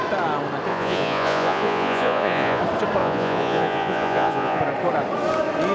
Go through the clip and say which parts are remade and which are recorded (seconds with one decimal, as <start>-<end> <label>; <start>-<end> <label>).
0.0-0.7 recorded; 0.7-2.6 remade; 2.6-3.0 recorded; 3.0-4.6 remade; 4.6-5.7 recorded